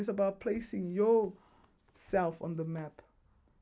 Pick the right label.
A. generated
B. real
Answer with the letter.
B